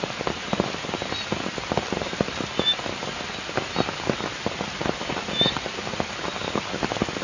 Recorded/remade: recorded